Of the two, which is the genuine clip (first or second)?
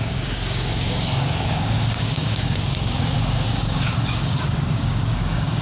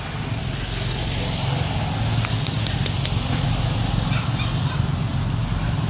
second